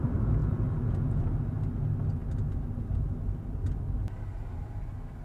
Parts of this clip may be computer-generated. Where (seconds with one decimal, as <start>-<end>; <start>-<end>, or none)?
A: 0.4-1.2